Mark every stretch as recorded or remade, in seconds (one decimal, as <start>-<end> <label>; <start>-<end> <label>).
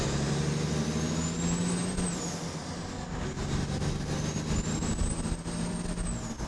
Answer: 0.0-6.5 recorded